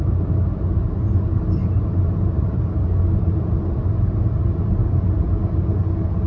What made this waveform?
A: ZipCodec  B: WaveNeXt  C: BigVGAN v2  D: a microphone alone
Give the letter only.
D